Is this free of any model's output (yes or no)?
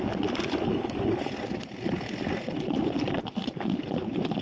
yes